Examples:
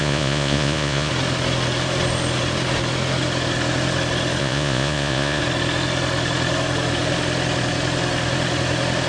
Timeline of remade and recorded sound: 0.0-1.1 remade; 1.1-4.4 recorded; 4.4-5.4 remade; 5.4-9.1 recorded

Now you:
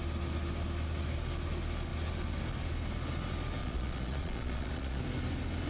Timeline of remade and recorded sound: 0.0-3.6 recorded; 3.6-5.0 remade; 5.0-5.7 recorded

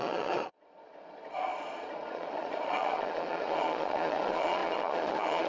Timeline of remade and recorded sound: 0.0-5.5 remade